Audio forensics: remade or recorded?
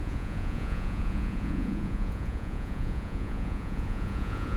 remade